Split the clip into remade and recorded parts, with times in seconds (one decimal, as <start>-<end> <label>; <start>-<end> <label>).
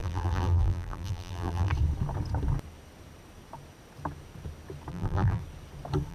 0.0-1.7 remade; 1.7-4.9 recorded; 4.9-5.4 remade; 5.4-6.1 recorded